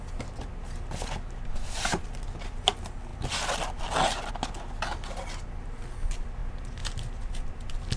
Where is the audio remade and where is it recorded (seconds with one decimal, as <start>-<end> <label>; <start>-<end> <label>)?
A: 0.0-8.0 recorded